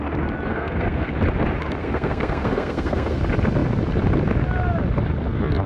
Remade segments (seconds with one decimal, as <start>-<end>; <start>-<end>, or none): 0.5-1.1; 1.8-3.2